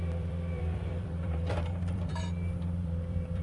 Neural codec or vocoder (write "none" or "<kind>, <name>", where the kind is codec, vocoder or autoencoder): vocoder, BigVGAN v2